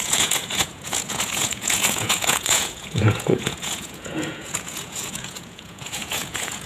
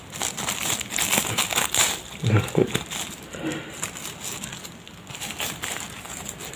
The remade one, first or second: first